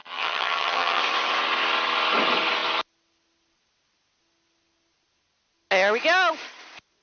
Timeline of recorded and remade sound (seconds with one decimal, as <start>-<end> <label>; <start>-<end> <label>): 0.0-1.0 remade; 1.0-7.0 recorded